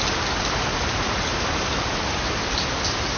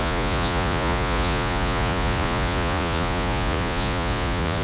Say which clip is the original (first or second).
first